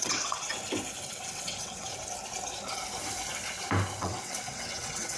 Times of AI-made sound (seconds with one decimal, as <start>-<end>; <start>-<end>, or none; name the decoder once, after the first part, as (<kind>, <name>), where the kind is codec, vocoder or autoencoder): 0.0-0.5 (vocoder, WaveNeXt); 1.3-1.9; 4.0-5.2